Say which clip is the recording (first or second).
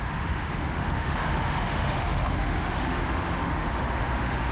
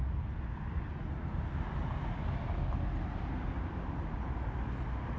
second